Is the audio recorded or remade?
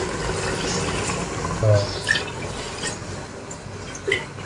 recorded